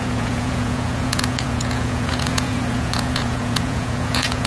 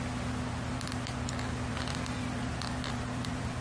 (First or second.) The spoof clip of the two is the first